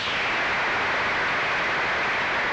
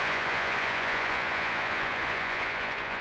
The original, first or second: first